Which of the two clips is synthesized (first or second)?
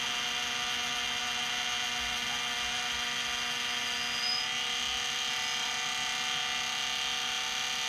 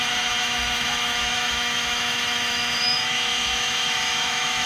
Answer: second